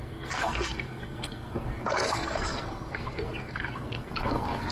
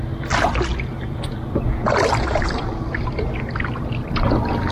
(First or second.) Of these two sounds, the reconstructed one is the first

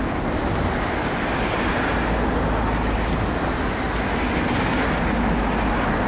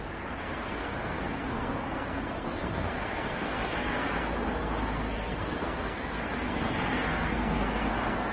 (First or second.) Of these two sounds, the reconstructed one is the second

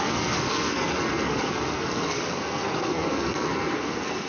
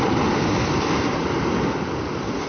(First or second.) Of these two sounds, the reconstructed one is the first